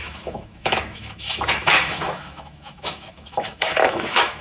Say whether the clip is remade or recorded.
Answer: remade